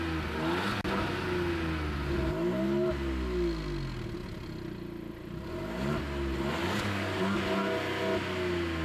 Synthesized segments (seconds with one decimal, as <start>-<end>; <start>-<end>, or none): 6.6-7.4